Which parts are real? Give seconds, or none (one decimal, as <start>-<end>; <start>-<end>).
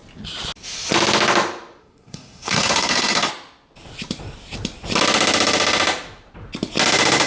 0.0-1.8; 3.3-7.3